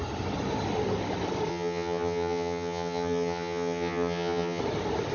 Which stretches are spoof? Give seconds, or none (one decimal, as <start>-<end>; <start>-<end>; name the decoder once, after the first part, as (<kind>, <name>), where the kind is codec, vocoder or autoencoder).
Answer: 1.5-4.6 (vocoder, HiFi-GAN)